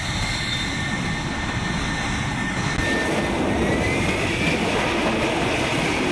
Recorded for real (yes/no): yes